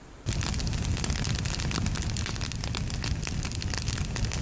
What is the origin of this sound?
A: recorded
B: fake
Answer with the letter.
B